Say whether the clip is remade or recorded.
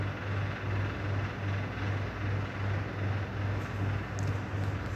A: recorded